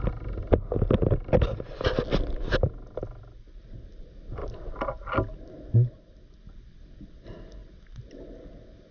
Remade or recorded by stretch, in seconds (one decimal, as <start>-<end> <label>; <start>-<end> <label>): 0.0-4.4 recorded; 4.4-5.5 remade; 5.5-8.9 recorded